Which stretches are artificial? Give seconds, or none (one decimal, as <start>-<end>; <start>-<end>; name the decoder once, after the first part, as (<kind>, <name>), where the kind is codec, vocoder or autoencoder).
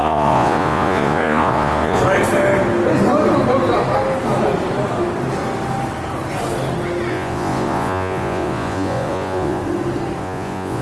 0.0-2.0 (vocoder, Vocos); 7.1-9.6; 10.2-10.8